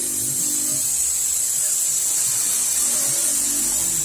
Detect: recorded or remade recorded